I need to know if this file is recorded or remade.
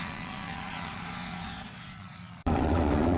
remade